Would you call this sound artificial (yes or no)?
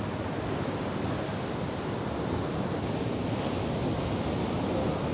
no